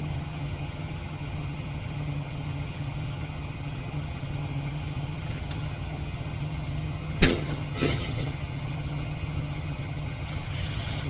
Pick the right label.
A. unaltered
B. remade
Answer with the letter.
B